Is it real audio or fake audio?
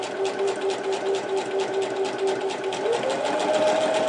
real